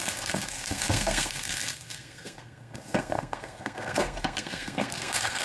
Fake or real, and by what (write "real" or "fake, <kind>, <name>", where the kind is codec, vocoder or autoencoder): fake, codec, SNAC